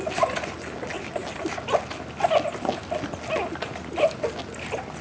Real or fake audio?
real